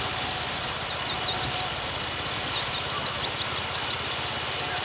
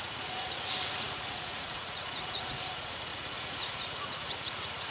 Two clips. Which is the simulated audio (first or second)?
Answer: second